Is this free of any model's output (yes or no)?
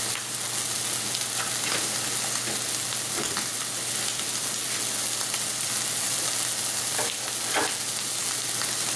yes